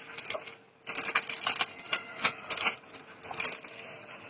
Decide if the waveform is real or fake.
real